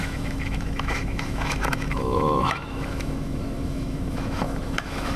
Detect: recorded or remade remade